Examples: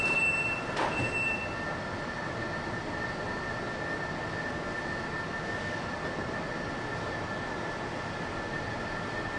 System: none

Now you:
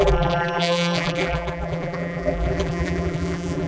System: vocoder, BigVGAN v2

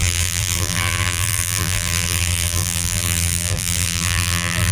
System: vocoder, BigVGAN v2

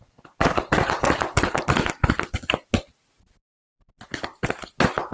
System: none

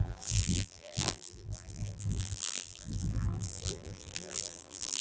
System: vocoder, BigVGAN v2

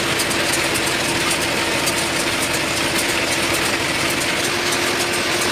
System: none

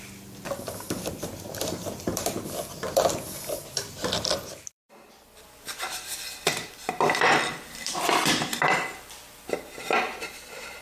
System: vocoder, BigVGAN v2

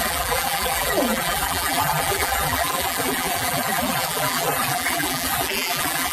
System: vocoder, BigVGAN v2